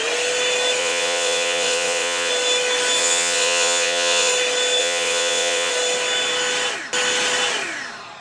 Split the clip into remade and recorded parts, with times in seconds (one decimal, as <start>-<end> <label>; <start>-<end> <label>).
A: 0.0-0.8 recorded; 0.8-2.3 remade; 2.3-3.0 recorded; 3.0-4.3 remade; 4.3-4.8 recorded; 4.8-5.7 remade; 5.7-8.2 recorded